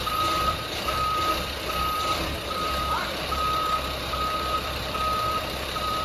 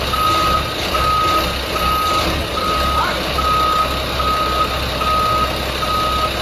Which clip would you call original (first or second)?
second